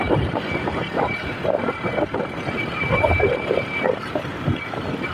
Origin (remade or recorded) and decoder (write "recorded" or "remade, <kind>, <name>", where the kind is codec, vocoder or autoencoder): remade, vocoder, BigVGAN v2